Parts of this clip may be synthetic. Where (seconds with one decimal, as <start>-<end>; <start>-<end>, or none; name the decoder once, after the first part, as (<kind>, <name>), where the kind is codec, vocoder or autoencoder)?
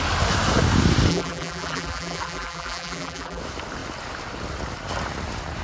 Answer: 1.1-3.4 (vocoder, BigVGAN v2)